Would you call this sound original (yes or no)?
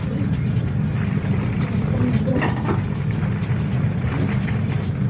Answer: no